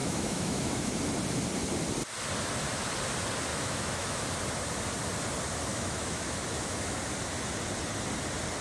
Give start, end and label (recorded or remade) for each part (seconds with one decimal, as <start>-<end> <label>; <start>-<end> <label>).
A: 0.0-1.0 remade; 1.0-3.5 recorded; 3.5-4.3 remade; 4.3-5.7 recorded; 5.7-7.0 remade; 7.0-8.6 recorded